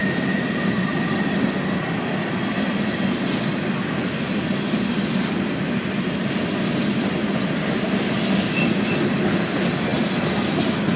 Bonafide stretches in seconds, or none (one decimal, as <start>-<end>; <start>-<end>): 0.0-11.0